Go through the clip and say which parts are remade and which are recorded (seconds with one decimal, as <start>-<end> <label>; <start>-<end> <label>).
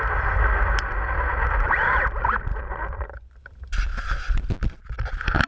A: 0.0-5.5 recorded